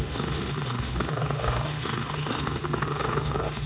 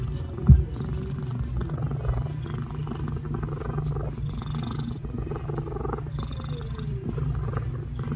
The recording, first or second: second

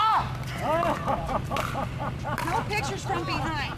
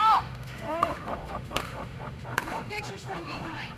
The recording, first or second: first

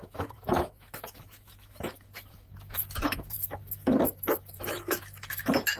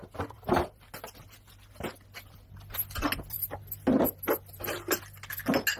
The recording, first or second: second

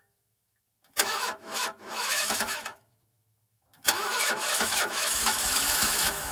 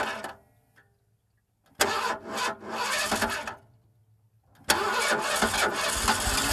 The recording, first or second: second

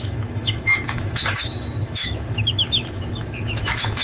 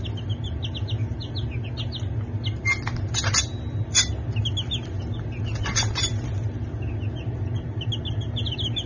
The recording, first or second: second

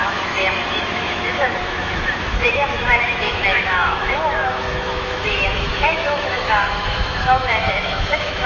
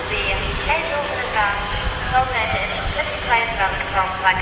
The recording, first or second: second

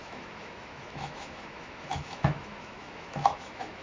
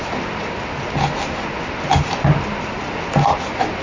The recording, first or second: second